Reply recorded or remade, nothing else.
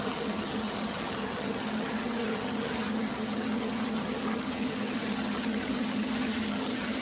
remade